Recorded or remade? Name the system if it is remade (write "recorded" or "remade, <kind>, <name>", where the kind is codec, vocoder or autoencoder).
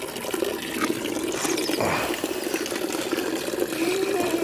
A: recorded